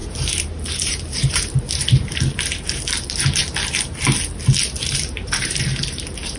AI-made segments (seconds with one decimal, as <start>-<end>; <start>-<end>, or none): 0.0-3.4; 4.9-6.4